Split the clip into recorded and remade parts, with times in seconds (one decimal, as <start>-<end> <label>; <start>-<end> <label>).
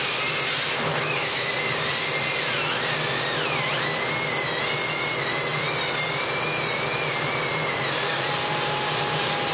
0.0-0.9 recorded; 0.9-1.5 remade; 1.5-9.5 recorded